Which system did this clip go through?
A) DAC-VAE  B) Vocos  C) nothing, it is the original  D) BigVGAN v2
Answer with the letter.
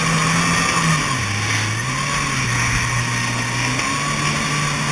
C